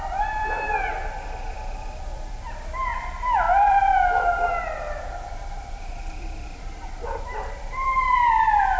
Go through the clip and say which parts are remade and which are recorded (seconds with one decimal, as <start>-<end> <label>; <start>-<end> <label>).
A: 0.0-8.8 remade